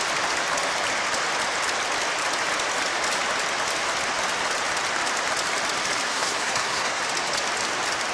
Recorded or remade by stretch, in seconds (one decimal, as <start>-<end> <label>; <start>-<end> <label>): 0.0-6.1 recorded; 6.1-7.0 remade; 7.0-8.1 recorded